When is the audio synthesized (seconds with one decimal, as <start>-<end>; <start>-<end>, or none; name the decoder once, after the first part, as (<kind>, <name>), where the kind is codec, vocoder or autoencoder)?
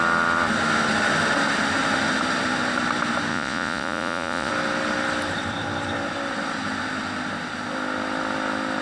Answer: 3.3-4.5 (vocoder, Vocos)